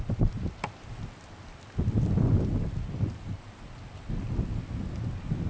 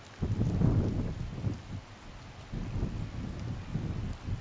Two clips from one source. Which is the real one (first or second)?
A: second